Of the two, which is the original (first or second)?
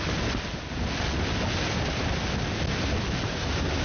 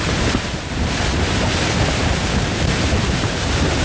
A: first